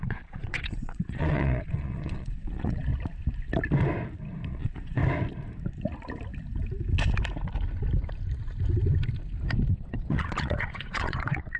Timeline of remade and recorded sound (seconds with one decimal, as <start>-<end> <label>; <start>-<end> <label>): 0.0-2.9 remade; 2.9-4.5 recorded; 4.5-5.0 remade; 5.0-9.7 recorded; 9.7-11.6 remade

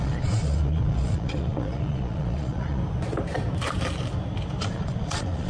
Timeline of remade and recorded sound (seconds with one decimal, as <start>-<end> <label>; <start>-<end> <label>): 0.0-2.8 remade; 2.8-4.6 recorded; 4.6-5.5 remade

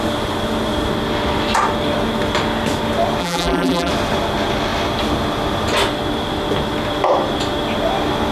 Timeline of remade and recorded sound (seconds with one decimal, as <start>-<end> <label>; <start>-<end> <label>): 0.0-3.2 recorded; 3.2-3.9 remade; 3.9-8.3 recorded

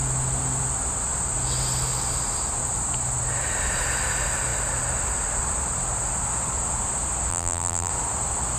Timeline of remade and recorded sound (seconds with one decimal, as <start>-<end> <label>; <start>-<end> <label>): 0.0-7.3 recorded; 7.3-7.9 remade; 7.9-8.6 recorded

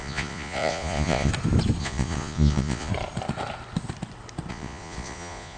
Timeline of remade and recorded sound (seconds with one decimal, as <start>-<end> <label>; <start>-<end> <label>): 0.0-1.3 remade; 1.3-1.8 recorded; 1.8-2.9 remade; 2.9-4.5 recorded; 4.5-5.6 remade

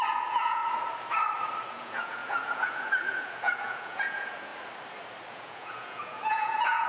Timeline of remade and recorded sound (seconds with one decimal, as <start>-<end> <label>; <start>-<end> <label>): 0.0-0.6 remade; 0.6-1.7 recorded; 1.7-4.5 remade; 4.5-5.3 recorded; 5.3-6.9 remade